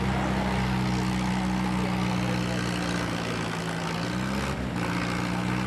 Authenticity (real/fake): real